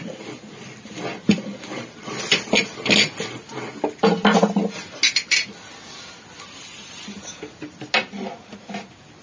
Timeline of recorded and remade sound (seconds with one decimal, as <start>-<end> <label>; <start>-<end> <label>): 0.0-9.2 recorded